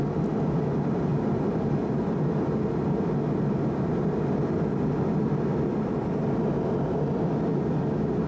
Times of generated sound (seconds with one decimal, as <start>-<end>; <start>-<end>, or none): none